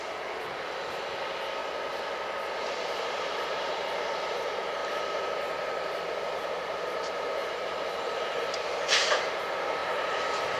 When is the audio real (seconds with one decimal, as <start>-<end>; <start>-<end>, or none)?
1.6-2.6